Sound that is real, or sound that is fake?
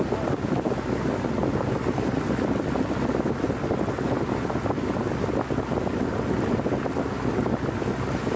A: real